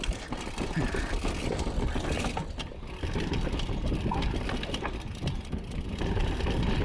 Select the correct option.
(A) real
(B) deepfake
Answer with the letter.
A